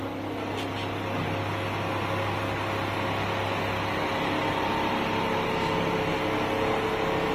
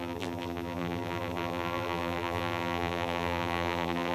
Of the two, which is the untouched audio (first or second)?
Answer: first